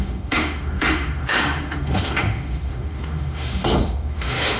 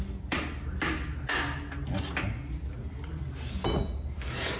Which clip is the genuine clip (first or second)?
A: second